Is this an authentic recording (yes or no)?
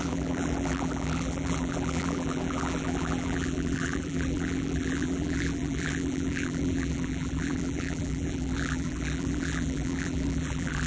no